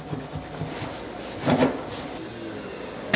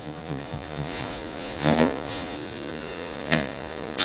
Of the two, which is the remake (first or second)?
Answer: second